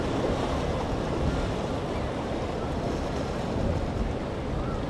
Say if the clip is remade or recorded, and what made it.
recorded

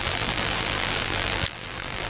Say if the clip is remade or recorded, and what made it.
remade, vocoder, BigVGAN v2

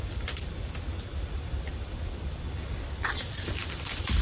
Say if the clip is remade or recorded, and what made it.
remade, vocoder, BigVGAN v2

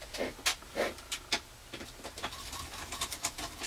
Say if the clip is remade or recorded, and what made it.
recorded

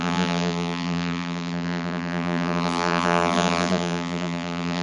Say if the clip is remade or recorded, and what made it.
remade, vocoder, BigVGAN v2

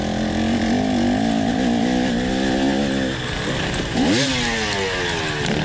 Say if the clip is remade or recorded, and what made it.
recorded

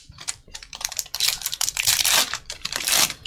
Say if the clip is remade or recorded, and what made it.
remade, vocoder, BigVGAN v2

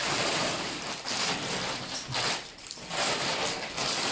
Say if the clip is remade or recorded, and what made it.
remade, vocoder, BigVGAN v2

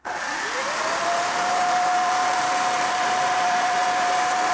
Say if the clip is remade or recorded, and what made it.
remade, vocoder, BigVGAN v2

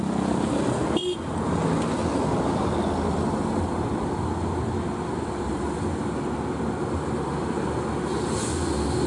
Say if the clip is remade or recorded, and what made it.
recorded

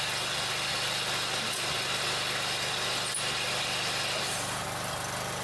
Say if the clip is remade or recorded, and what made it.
recorded